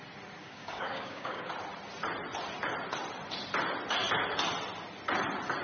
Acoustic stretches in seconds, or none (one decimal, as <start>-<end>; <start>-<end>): 0.0-0.4; 1.5-5.6